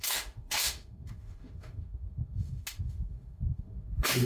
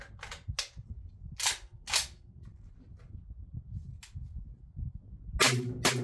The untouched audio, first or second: second